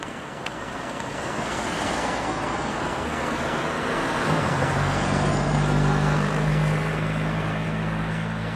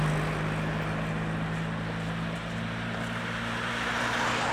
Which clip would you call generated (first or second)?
first